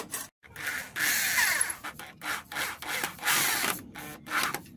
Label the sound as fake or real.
real